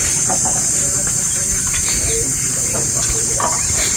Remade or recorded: remade